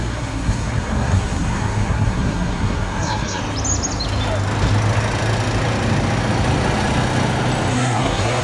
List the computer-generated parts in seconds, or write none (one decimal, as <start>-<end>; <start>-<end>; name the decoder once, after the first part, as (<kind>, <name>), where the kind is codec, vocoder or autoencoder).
0.0-3.4 (codec, SNAC); 7.7-8.4